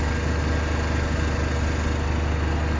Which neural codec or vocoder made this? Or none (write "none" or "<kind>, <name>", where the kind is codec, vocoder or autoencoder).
none